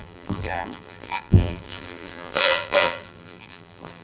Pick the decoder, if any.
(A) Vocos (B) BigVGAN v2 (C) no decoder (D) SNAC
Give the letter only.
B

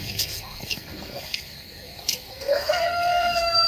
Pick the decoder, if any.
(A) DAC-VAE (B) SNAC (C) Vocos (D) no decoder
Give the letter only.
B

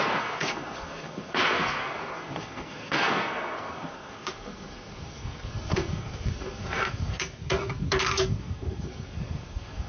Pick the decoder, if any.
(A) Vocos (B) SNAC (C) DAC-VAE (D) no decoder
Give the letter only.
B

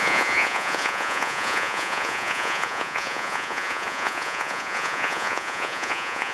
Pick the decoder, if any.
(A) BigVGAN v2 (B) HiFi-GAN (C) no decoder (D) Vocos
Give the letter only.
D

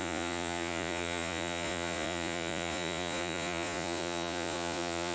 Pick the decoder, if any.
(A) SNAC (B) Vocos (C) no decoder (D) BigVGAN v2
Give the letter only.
B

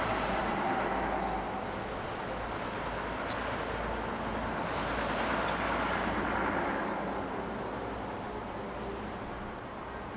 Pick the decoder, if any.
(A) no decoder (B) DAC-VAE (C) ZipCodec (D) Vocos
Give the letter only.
A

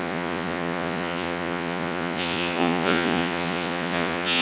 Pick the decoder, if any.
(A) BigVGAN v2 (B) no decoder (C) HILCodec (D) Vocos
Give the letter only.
D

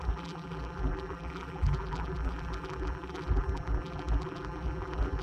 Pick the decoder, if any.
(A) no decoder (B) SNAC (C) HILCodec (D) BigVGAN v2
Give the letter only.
D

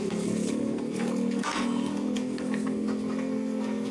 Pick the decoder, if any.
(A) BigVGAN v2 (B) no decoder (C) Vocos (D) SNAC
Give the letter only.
D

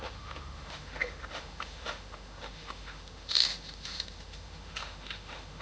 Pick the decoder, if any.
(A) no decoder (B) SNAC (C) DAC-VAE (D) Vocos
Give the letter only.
C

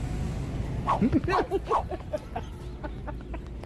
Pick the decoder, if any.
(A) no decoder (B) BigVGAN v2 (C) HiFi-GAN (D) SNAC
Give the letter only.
A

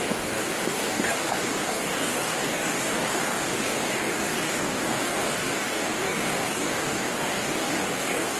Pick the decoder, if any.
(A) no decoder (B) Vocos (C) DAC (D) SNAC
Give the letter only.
C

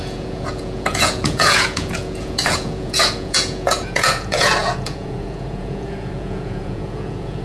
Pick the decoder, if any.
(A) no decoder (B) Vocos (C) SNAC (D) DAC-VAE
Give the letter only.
B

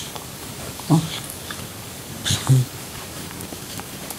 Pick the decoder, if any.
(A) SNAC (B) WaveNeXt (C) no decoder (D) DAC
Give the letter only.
D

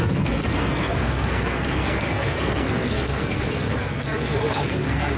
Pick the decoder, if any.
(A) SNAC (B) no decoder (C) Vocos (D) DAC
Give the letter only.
A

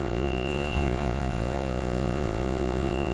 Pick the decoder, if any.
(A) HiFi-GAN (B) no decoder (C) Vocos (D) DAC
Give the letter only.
C